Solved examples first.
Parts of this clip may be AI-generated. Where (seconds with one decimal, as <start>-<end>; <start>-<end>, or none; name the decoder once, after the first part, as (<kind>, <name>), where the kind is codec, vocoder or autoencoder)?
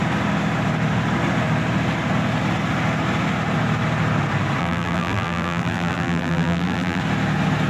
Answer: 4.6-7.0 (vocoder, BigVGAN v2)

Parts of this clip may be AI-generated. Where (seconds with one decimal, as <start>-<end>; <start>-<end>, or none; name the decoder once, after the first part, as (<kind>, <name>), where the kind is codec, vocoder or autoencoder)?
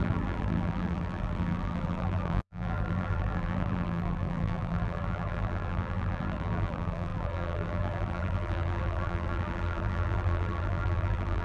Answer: 0.0-11.4 (vocoder, BigVGAN v2)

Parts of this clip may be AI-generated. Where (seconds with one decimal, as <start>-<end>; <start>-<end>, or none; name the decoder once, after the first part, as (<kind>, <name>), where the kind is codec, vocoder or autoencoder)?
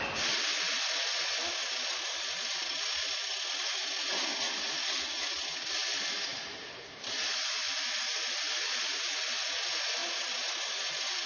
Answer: 6.3-7.2 (vocoder, BigVGAN v2); 10.0-10.5